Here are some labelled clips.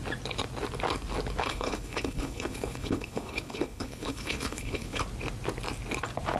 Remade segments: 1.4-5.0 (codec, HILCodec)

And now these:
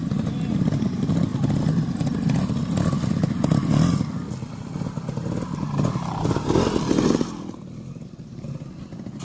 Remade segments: none

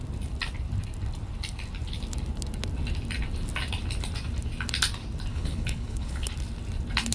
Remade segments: 5.3-6.3 (codec, HILCodec)

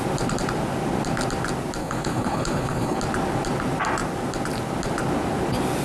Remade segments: 1.8-3.0 (codec, HILCodec)

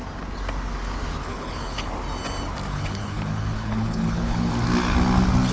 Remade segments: 1.2-1.9 (codec, HILCodec); 2.7-4.5

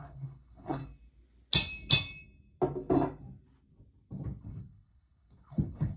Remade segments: 0.0-0.8 (codec, HILCodec); 4.4-6.0

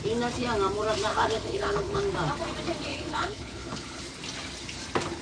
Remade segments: 1.1-2.0 (codec, HILCodec); 2.9-4.0